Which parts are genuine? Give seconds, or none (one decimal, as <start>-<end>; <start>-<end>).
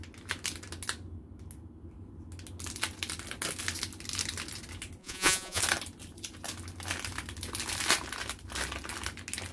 0.0-5.0; 5.6-9.5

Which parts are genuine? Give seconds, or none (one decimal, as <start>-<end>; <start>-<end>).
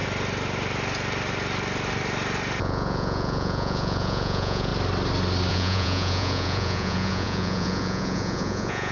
0.0-2.6; 4.7-5.5